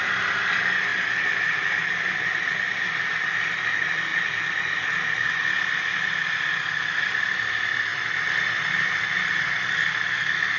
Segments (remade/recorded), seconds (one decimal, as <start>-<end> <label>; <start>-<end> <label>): 0.0-10.6 recorded